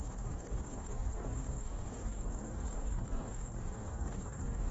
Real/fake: fake